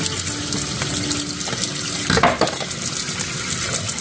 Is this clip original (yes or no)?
yes